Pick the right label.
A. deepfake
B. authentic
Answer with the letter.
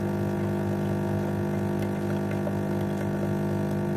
B